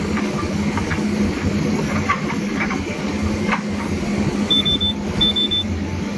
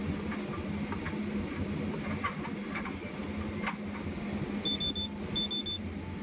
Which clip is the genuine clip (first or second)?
second